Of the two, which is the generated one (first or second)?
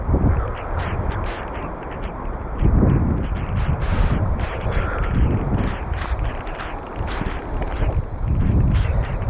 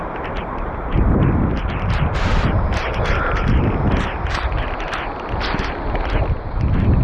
first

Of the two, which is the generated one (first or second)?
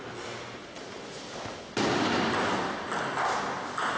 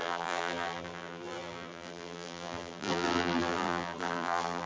second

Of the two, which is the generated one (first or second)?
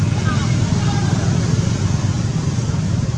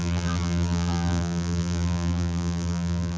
second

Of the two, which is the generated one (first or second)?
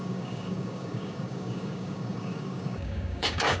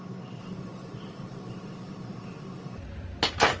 first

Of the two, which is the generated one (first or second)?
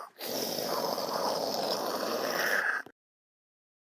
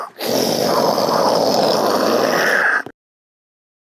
first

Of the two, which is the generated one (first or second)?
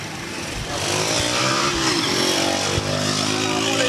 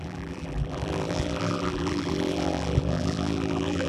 second